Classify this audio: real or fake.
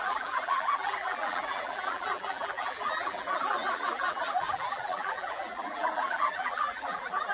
fake